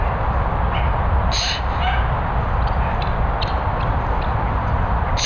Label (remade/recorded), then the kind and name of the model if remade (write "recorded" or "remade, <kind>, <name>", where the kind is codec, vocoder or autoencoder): recorded